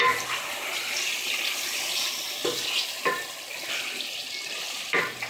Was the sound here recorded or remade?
recorded